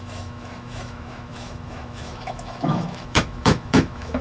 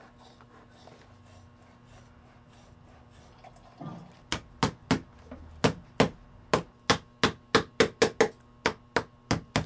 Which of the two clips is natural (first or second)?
second